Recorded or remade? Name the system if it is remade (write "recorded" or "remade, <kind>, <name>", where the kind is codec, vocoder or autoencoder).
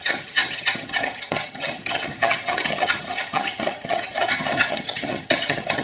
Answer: remade, vocoder, HiFi-GAN